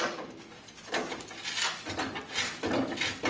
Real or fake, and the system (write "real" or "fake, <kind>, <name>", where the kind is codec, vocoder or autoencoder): real